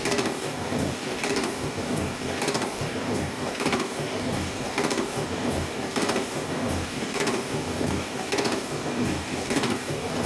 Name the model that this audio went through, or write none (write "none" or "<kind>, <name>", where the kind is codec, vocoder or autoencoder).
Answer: codec, DAC